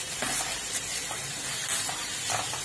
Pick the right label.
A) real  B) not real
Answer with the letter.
A